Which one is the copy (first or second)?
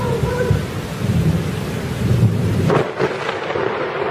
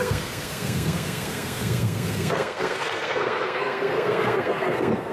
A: second